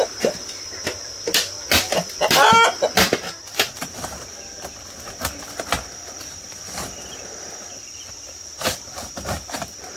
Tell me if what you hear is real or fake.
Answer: real